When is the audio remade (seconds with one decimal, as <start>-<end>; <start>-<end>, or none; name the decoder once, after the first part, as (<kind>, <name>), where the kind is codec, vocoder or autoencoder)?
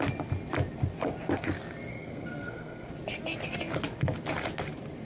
1.9-2.9 (codec, SNAC)